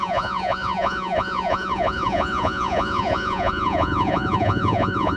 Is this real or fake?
fake